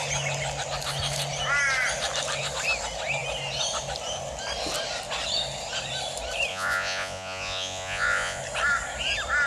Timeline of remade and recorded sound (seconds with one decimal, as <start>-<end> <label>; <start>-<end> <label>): 0.0-6.5 recorded; 6.5-8.4 remade; 8.4-9.5 recorded

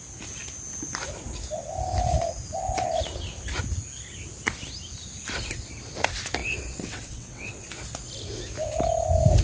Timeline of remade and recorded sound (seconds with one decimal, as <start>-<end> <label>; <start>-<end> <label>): 0.0-6.4 recorded; 6.4-7.5 remade; 7.5-9.4 recorded

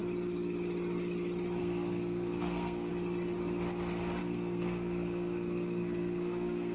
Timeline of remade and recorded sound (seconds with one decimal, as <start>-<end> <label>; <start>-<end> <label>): 0.0-1.6 recorded; 1.6-2.9 remade; 2.9-4.2 recorded; 4.2-6.7 remade